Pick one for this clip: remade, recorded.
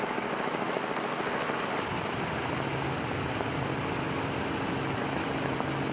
recorded